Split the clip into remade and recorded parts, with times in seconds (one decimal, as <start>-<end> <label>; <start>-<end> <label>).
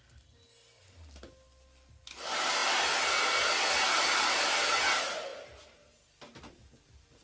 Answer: 0.0-7.2 recorded